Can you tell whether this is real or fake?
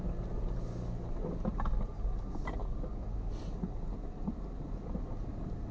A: real